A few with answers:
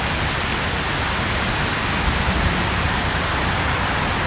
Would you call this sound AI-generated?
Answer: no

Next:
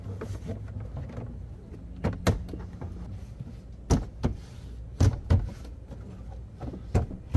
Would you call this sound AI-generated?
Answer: no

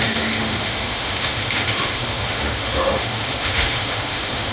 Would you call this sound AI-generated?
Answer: yes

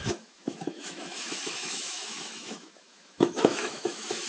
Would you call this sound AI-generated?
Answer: yes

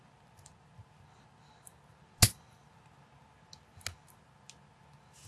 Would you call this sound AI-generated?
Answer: no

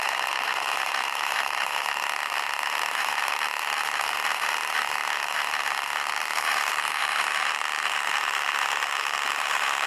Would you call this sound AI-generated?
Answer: yes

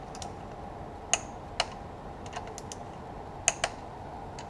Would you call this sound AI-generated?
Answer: no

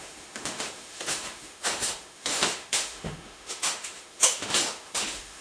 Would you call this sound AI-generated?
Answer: yes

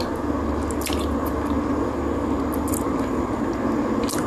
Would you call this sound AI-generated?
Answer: no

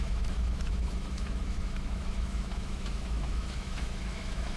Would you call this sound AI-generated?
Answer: yes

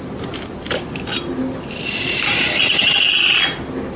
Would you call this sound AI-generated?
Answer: no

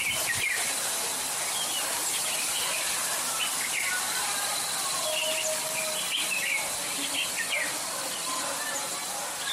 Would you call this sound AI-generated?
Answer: no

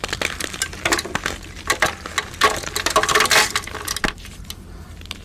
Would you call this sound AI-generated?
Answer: no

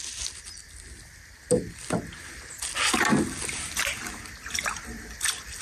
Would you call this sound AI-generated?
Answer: no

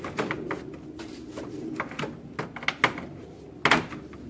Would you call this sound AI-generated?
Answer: no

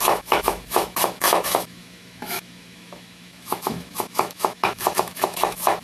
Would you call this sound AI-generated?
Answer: yes